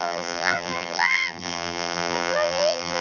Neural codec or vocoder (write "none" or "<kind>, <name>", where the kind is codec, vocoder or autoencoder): vocoder, BigVGAN v2